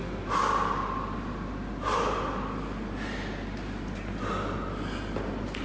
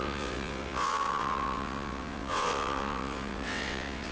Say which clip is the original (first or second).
first